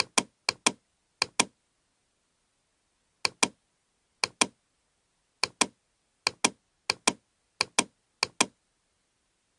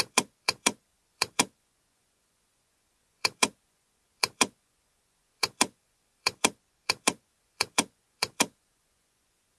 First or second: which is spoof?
second